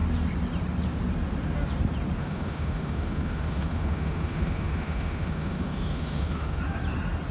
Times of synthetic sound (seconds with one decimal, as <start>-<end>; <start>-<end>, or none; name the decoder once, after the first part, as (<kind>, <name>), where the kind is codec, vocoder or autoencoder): 2.2-6.6 (autoencoder, DAC-VAE)